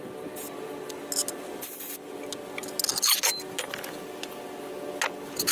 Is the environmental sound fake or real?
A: real